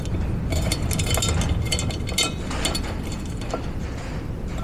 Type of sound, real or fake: real